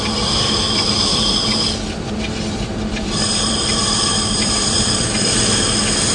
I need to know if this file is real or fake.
fake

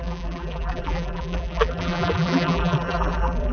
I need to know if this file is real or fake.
fake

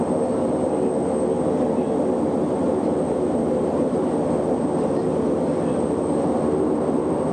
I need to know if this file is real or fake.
fake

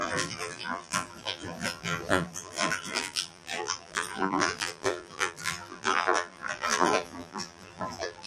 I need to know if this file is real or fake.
fake